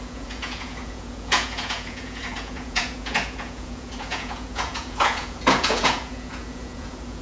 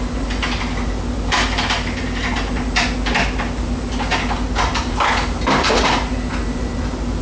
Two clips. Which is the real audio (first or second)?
second